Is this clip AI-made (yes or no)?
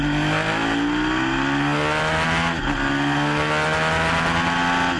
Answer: no